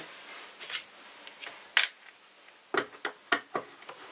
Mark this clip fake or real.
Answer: real